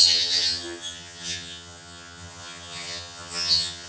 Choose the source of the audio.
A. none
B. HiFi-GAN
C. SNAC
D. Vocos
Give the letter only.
B